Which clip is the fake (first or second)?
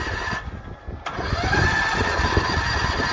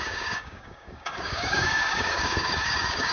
second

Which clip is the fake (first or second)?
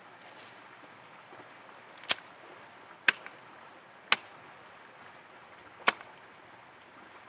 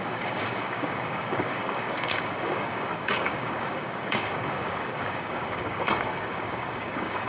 second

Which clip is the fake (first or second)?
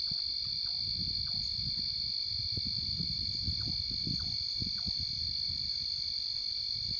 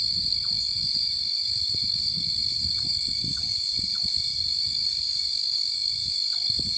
second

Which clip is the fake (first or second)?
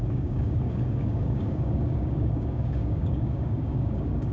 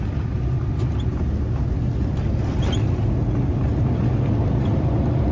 first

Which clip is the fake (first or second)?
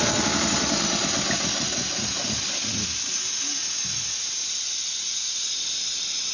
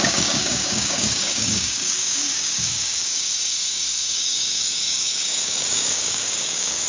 second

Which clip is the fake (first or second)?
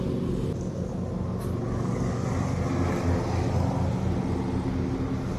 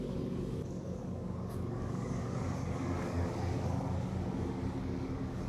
second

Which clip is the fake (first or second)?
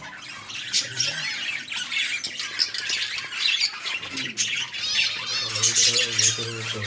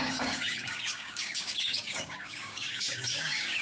second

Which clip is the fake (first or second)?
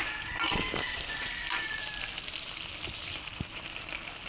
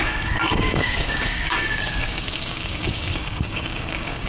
second